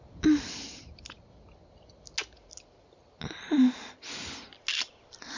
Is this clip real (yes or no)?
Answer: yes